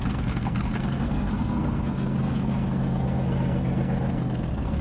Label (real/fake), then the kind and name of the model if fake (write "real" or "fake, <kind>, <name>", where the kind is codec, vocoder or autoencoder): fake, codec, SNAC